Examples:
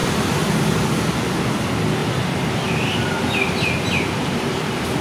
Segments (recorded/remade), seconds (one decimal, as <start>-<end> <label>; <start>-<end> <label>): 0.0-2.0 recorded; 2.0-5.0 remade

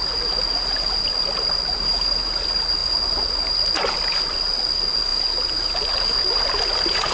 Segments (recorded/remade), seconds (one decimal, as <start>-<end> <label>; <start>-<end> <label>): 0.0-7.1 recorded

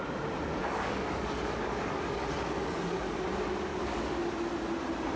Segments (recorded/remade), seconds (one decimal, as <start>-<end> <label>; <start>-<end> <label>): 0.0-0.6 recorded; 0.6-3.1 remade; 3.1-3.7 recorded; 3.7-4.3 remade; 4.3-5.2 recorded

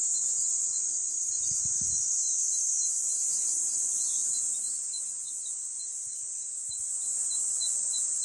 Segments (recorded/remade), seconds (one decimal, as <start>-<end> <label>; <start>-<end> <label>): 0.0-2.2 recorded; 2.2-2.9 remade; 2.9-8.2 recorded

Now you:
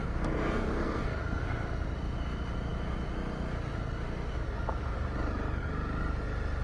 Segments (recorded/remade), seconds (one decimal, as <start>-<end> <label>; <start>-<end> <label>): 0.0-1.2 remade; 1.2-6.6 recorded

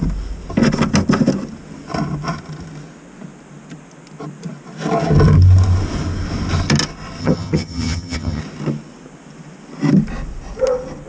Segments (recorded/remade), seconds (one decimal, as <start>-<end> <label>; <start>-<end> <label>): 0.0-7.2 recorded; 7.2-8.4 remade; 8.4-11.1 recorded